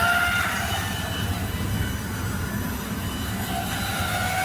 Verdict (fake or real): real